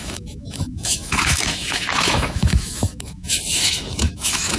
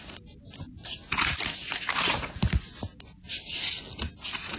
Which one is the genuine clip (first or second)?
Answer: second